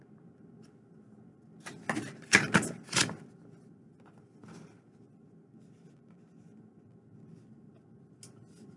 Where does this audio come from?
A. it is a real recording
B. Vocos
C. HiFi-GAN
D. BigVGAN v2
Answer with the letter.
A